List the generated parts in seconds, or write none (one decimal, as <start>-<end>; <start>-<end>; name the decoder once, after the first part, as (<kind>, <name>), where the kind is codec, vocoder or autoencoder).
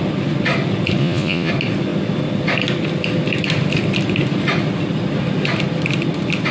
1.0-1.5 (vocoder, Vocos)